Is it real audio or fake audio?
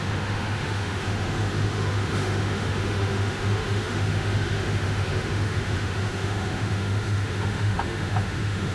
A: fake